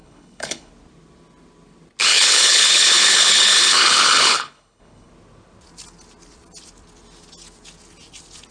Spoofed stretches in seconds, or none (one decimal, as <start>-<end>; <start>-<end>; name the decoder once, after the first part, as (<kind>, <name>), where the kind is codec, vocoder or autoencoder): 0.0-0.7 (codec, HILCodec); 2.1-5.1